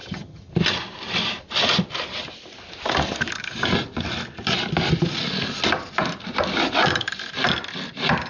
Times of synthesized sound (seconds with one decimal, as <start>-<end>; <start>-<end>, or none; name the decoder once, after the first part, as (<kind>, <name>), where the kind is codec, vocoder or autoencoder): 0.0-0.5 (vocoder, HiFi-GAN)